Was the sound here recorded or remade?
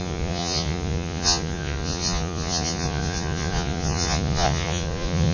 remade